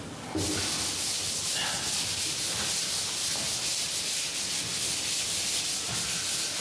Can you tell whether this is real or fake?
real